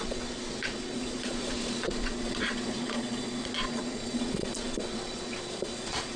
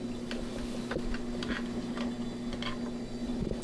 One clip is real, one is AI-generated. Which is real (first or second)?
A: second